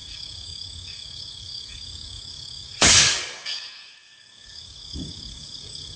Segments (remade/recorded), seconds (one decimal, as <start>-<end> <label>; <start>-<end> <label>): 0.0-6.0 remade